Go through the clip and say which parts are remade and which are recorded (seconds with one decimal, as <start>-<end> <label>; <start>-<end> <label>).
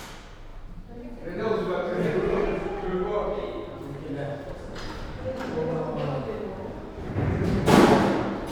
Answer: 0.0-8.5 recorded